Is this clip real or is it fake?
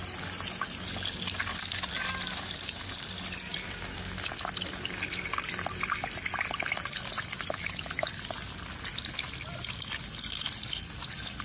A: real